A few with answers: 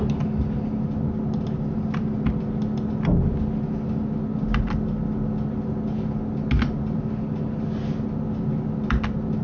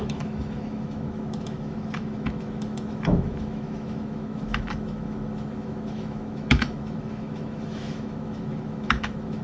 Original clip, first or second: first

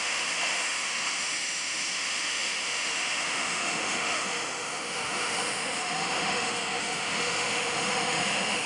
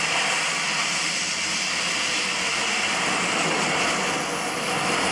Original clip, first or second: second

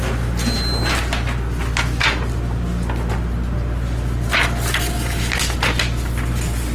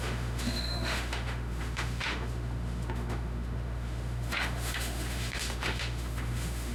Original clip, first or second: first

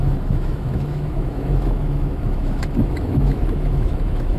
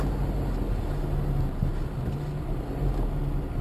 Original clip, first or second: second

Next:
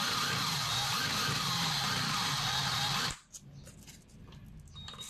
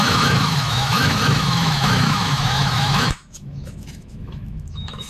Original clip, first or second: first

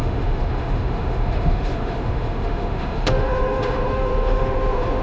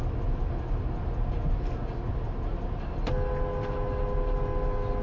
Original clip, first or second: second